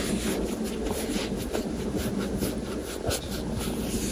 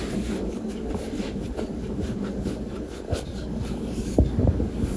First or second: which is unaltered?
first